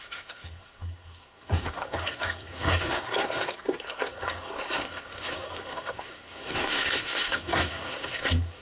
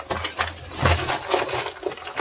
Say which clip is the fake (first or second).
first